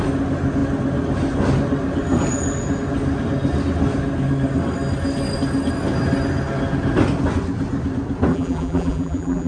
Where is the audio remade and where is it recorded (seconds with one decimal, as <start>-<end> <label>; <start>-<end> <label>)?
0.0-8.3 recorded; 8.3-9.5 remade